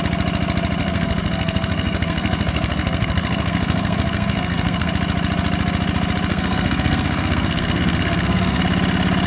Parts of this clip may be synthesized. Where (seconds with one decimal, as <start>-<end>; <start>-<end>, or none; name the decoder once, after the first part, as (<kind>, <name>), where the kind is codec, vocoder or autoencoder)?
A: 0.8-4.9 (codec, SNAC); 6.3-8.6